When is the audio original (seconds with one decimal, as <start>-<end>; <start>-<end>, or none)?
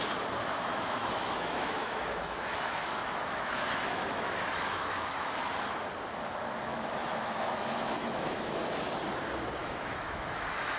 0.0-0.7; 5.5-6.7; 8.6-9.6